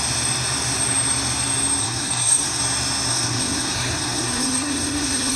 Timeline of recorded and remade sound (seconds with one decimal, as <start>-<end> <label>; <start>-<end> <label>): 0.0-1.8 recorded; 1.8-2.6 remade; 2.6-3.1 recorded; 3.1-5.4 remade